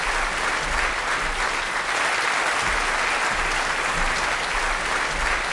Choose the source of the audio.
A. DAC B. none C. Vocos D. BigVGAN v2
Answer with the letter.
B